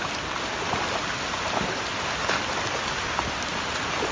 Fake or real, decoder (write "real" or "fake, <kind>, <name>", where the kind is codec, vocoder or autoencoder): real